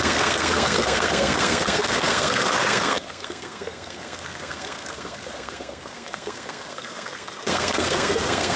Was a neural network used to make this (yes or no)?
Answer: yes